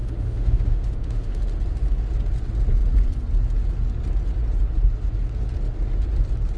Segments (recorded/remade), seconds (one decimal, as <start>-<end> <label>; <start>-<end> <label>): 0.0-1.4 remade; 1.4-6.6 recorded